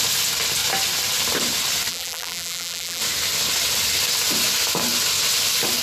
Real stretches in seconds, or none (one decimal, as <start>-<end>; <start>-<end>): 0.0-1.9; 3.0-5.8